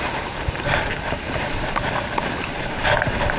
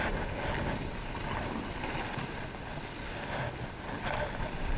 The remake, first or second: first